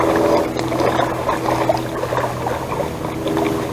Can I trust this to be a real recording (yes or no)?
yes